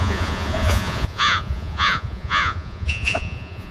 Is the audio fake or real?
fake